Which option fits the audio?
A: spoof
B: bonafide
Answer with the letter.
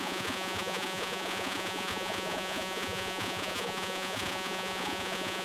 A